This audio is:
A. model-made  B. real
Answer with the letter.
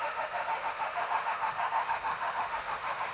A